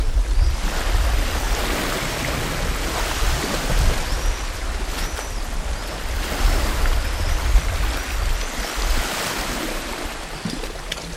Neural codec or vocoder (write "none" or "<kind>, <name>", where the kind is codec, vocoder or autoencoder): none